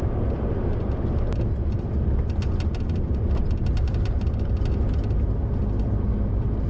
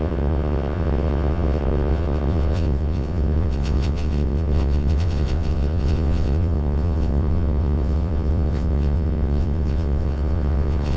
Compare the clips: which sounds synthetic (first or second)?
second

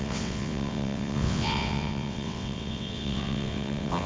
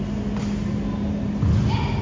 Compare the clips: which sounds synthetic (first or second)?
first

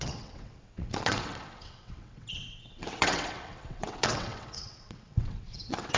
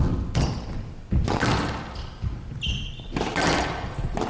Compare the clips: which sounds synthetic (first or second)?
first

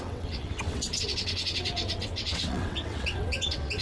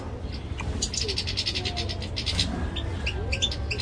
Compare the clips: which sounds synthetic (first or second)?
first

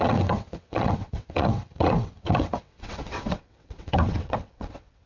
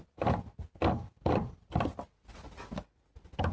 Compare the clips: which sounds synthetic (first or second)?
first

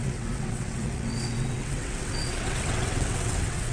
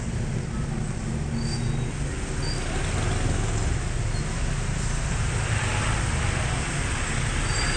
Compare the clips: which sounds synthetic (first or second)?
first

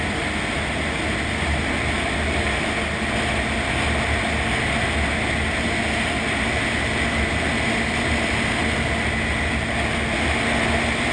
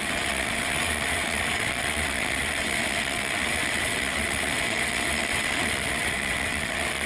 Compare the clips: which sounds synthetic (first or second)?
second